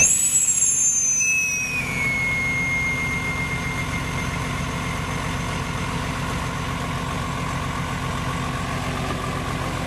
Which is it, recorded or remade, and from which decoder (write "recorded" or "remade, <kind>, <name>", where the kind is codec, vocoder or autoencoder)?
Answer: recorded